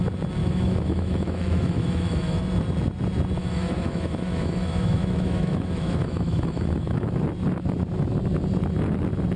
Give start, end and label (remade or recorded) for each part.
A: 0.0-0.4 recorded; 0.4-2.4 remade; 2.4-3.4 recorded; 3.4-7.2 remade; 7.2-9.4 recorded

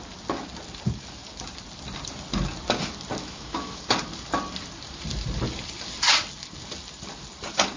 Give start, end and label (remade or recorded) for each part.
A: 0.0-3.2 recorded; 3.2-3.8 remade; 3.8-7.8 recorded

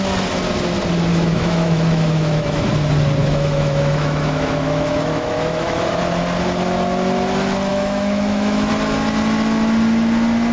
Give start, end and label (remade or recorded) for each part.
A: 0.0-1.1 recorded; 1.1-2.7 remade; 2.7-3.2 recorded; 3.2-6.0 remade; 6.0-7.7 recorded; 7.7-8.7 remade; 8.7-10.5 recorded

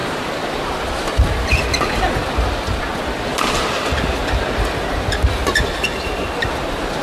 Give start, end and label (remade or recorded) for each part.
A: 0.0-7.0 recorded

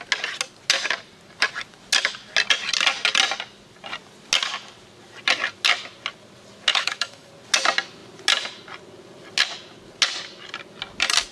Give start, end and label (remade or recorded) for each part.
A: 0.0-6.7 recorded; 6.7-7.3 remade; 7.3-11.3 recorded

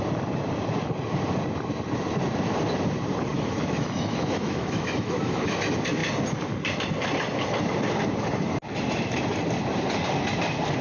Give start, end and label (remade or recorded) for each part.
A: 0.0-3.3 recorded; 3.3-5.5 remade; 5.5-10.8 recorded

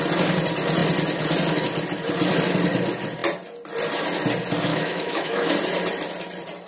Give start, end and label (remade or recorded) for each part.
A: 0.0-4.7 recorded; 4.7-5.5 remade; 5.5-6.7 recorded